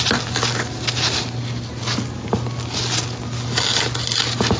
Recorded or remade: recorded